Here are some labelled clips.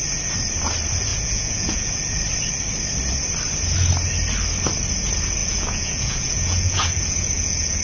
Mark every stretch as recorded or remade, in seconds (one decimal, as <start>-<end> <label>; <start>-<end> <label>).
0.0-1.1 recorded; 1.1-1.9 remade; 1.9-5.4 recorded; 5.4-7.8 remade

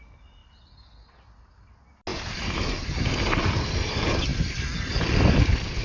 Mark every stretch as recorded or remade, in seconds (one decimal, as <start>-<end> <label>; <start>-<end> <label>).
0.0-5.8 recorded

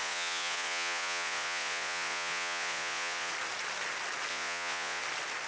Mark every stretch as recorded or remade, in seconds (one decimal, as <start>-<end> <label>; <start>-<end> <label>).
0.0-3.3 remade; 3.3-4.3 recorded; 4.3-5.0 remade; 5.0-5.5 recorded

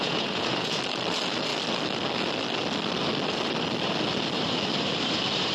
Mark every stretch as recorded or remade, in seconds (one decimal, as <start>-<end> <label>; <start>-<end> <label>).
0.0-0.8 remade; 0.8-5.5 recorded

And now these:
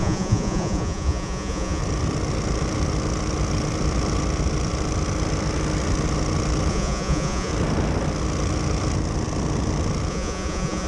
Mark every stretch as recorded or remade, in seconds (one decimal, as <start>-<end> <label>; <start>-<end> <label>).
0.0-1.8 remade; 1.8-6.7 recorded; 6.7-7.5 remade; 7.5-10.1 recorded; 10.1-10.9 remade

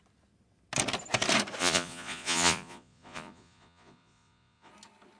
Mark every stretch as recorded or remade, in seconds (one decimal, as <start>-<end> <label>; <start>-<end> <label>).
0.0-1.6 recorded; 1.6-4.7 remade; 4.7-5.2 recorded

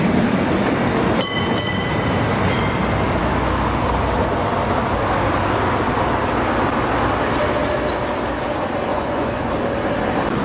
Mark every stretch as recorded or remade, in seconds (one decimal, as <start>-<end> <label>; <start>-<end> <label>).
0.0-8.9 recorded; 8.9-9.5 remade; 9.5-10.4 recorded

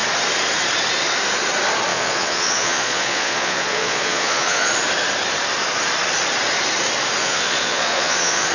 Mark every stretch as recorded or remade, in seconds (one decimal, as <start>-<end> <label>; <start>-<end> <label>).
0.0-1.9 recorded; 1.9-4.7 remade; 4.7-7.2 recorded; 7.2-8.5 remade